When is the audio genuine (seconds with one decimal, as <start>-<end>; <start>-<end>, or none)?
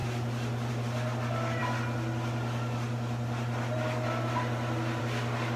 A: 0.0-5.6